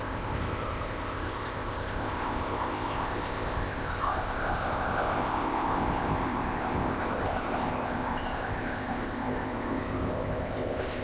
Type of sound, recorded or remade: remade